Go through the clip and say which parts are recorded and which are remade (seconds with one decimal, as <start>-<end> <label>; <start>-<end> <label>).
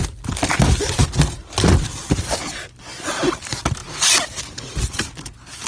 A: 0.0-5.7 recorded